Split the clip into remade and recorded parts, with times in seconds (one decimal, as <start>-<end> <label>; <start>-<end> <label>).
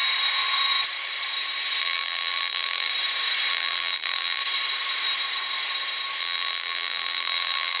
0.0-1.8 recorded; 1.8-2.9 remade; 2.9-3.5 recorded; 3.5-4.4 remade; 4.4-6.2 recorded; 6.2-7.8 remade